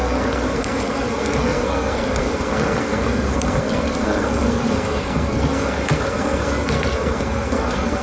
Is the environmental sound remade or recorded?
remade